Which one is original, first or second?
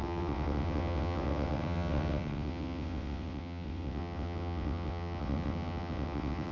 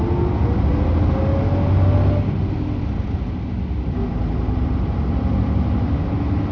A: second